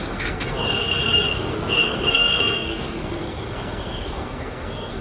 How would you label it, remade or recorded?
remade